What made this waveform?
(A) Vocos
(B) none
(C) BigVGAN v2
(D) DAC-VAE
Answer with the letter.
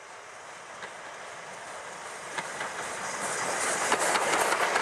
B